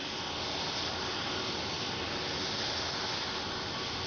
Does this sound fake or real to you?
real